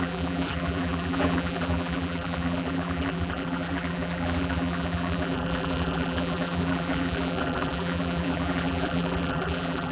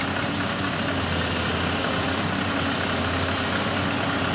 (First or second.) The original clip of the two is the second